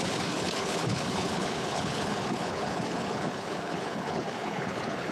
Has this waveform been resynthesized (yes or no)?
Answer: yes